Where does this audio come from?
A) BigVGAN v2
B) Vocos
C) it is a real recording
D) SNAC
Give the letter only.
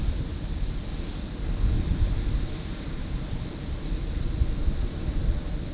C